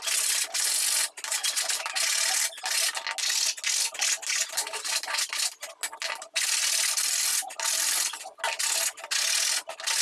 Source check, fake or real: real